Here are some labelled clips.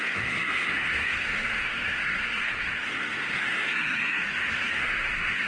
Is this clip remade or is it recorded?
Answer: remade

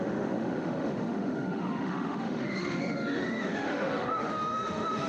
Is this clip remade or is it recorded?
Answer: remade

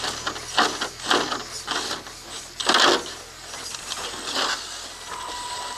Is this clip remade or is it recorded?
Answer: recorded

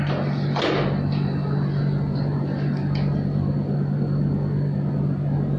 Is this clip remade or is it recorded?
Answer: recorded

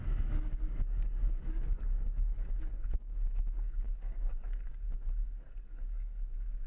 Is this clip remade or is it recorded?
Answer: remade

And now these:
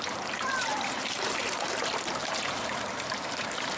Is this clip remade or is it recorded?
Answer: remade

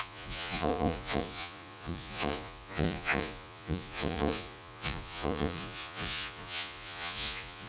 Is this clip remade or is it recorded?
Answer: remade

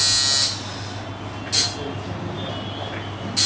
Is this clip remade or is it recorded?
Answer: recorded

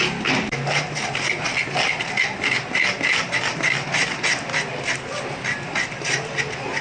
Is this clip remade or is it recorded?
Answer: recorded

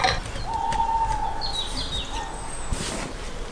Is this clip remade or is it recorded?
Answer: recorded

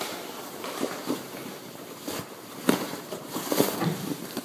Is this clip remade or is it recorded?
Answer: remade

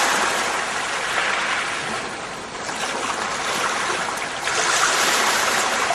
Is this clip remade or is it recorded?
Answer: recorded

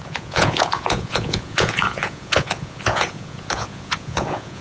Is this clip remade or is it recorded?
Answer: remade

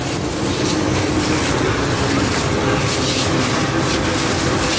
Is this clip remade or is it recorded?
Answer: recorded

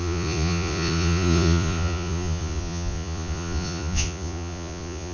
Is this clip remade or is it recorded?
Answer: remade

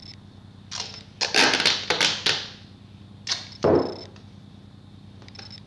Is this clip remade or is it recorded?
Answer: recorded